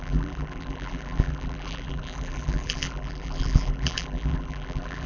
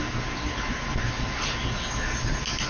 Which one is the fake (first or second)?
first